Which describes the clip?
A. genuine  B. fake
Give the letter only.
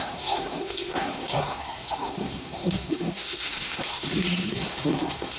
B